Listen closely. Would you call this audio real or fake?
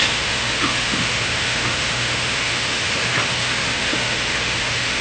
fake